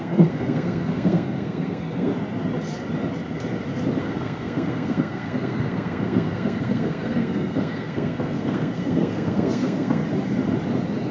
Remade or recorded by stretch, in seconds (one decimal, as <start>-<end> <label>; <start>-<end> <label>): 0.0-2.1 remade; 2.1-4.0 recorded; 4.0-10.0 remade; 10.0-11.1 recorded